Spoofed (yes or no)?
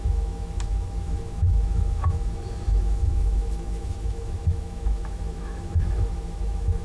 yes